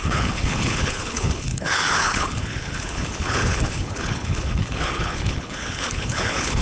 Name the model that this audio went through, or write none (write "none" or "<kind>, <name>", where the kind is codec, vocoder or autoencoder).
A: codec, HILCodec